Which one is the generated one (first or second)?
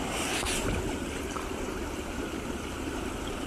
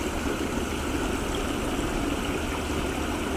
first